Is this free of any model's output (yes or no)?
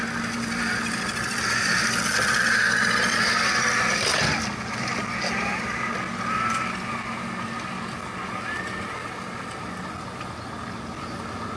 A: yes